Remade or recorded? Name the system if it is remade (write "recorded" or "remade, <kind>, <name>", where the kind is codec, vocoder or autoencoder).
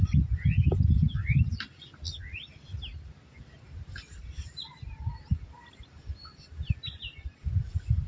remade, vocoder, BigVGAN v2